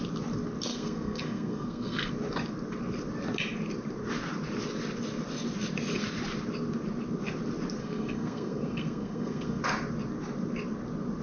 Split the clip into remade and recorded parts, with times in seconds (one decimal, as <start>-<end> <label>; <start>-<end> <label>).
0.0-0.7 recorded; 0.7-2.1 remade; 2.1-7.8 recorded; 7.8-9.6 remade; 9.6-11.2 recorded